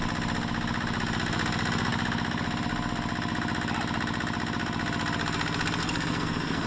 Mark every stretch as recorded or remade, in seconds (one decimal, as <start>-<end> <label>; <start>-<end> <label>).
0.0-5.8 recorded; 5.8-6.7 remade